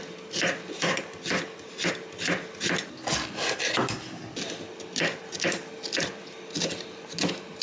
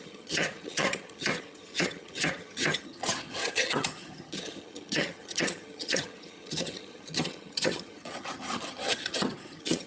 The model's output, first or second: second